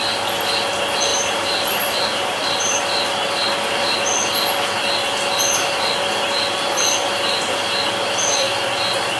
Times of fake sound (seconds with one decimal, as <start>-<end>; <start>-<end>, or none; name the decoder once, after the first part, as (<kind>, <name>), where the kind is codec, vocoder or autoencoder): 1.1-2.8 (vocoder, BigVGAN v2)

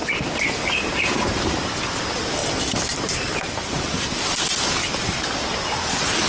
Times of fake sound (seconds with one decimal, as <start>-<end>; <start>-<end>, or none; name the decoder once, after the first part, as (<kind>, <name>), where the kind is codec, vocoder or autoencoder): 2.4-5.0 (vocoder, BigVGAN v2)

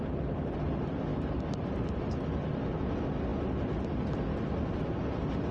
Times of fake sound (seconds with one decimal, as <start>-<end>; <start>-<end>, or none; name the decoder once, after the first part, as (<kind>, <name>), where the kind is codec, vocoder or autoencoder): 1.1-2.8 (vocoder, BigVGAN v2)

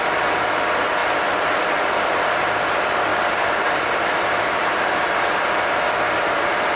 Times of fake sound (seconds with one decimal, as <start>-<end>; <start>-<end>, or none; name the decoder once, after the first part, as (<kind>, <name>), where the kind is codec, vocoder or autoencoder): 1.0-2.6 (vocoder, BigVGAN v2); 3.1-5.7

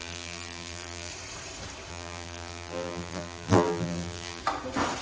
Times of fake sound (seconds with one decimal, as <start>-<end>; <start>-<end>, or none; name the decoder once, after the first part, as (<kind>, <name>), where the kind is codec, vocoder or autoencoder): 0.0-1.1 (vocoder, BigVGAN v2); 1.9-4.4

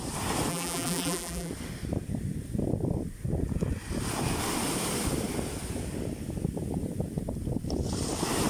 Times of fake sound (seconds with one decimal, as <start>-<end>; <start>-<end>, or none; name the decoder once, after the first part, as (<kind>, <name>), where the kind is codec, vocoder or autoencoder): 0.5-1.5 (vocoder, BigVGAN v2)